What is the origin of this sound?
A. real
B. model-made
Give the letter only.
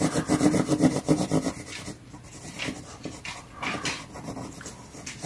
A